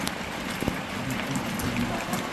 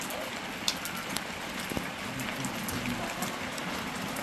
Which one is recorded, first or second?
second